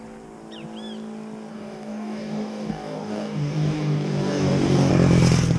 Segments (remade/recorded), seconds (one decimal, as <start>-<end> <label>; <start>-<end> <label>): 0.0-1.5 recorded; 1.5-4.9 remade; 4.9-5.6 recorded